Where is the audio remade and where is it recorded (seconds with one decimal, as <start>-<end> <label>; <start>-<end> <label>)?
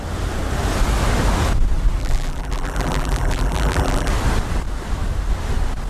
0.0-2.0 recorded; 2.0-4.1 remade; 4.1-5.9 recorded